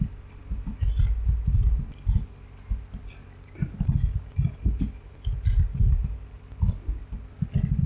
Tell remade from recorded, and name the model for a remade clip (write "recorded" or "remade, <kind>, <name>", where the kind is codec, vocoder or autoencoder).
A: recorded